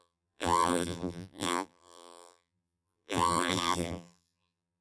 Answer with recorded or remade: remade